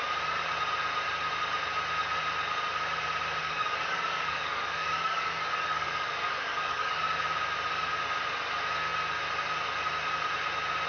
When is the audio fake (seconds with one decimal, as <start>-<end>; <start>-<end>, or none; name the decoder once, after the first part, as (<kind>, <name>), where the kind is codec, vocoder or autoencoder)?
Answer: 3.4-7.0 (codec, DAC)